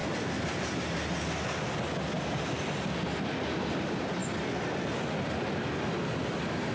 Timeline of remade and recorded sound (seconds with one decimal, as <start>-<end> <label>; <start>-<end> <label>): 0.0-6.7 recorded